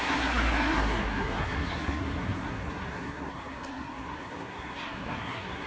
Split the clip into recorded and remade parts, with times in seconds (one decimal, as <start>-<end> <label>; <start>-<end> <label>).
0.0-5.7 remade

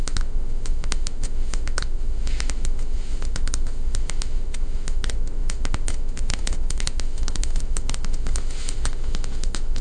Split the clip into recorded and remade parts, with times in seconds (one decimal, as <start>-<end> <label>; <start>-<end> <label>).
0.0-9.8 remade

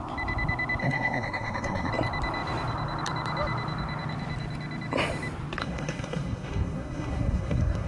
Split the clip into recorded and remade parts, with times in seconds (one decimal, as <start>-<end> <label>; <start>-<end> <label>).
0.0-0.8 recorded; 0.8-1.9 remade; 1.9-5.6 recorded; 5.6-7.9 remade

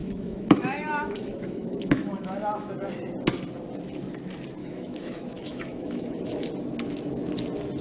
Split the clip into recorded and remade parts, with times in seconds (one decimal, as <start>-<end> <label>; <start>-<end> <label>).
0.0-2.7 remade; 2.7-4.6 recorded; 4.6-6.5 remade; 6.5-7.8 recorded